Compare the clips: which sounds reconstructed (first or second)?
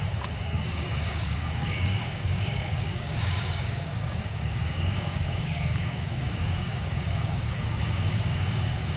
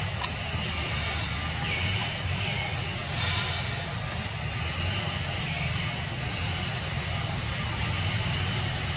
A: first